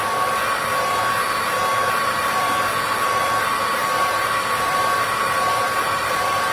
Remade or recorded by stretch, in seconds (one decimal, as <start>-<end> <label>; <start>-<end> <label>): 0.0-6.5 recorded